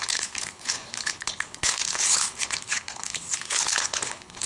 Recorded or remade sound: remade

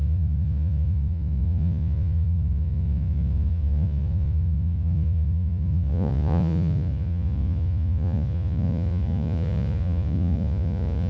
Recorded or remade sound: remade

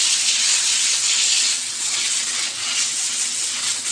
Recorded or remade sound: remade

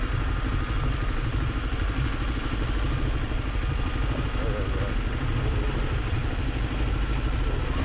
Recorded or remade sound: recorded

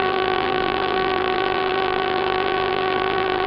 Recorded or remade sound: remade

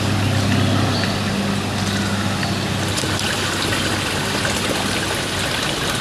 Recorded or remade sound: recorded